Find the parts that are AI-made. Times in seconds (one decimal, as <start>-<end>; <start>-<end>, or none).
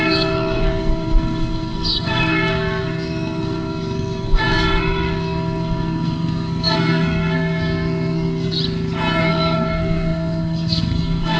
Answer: 0.0-8.6; 9.2-11.4